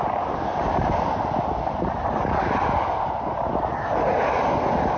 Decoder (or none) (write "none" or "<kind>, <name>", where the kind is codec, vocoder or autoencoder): none